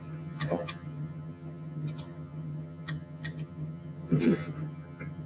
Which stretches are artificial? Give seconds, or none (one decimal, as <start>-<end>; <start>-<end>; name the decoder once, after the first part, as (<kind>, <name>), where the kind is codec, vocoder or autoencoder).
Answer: 0.0-5.3 (vocoder, HiFi-GAN)